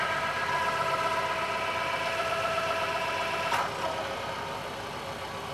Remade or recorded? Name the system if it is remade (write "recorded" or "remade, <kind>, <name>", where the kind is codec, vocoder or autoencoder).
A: recorded